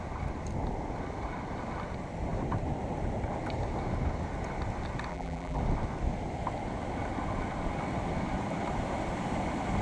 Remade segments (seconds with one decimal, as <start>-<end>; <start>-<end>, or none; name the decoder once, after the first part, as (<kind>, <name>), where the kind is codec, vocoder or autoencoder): 5.1-5.6 (vocoder, BigVGAN v2)